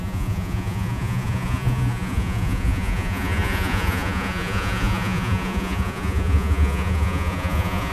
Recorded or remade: remade